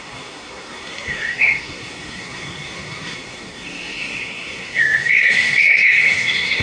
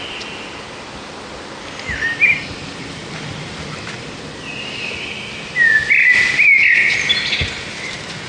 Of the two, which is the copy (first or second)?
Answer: first